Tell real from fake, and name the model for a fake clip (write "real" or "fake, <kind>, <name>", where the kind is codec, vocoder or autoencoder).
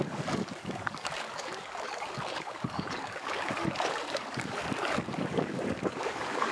fake, codec, DAC